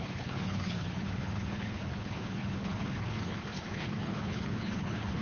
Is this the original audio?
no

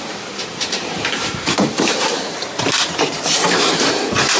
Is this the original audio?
no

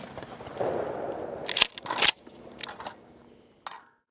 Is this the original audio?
yes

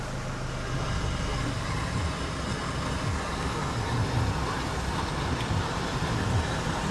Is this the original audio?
yes